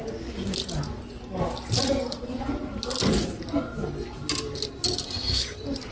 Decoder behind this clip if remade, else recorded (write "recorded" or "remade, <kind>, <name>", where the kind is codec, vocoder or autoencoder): recorded